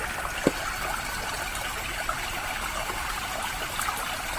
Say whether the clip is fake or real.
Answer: real